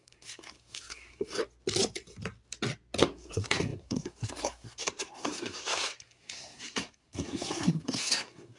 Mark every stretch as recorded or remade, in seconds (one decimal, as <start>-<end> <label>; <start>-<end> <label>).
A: 0.0-1.4 remade; 1.4-3.0 recorded; 3.0-8.6 remade